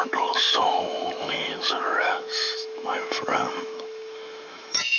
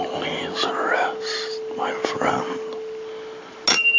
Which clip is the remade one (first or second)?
first